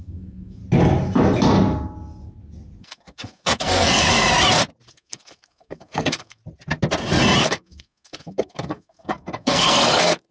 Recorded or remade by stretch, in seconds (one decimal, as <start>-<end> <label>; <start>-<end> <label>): 0.0-0.6 remade; 0.6-2.8 recorded; 2.8-4.0 remade; 4.0-4.9 recorded; 4.9-6.4 remade; 6.4-7.4 recorded; 7.4-10.3 remade